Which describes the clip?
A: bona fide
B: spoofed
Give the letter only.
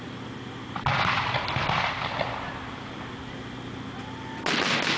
A